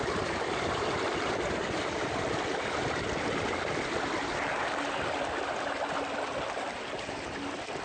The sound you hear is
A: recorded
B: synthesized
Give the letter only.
A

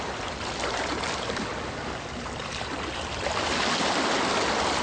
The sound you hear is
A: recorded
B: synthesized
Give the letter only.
A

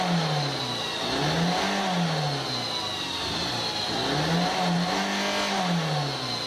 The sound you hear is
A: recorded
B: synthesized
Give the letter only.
A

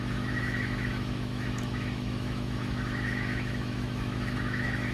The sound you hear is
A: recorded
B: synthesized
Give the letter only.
B